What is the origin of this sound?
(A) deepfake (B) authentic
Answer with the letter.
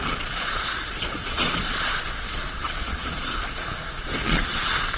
A